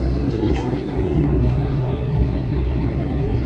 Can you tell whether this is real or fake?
fake